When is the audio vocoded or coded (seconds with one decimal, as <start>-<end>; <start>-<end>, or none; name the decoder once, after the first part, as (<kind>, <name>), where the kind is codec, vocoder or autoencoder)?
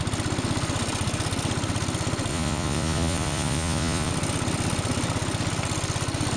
2.3-4.1 (vocoder, Vocos)